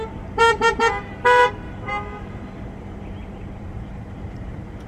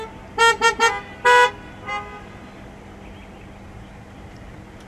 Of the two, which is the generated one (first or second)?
first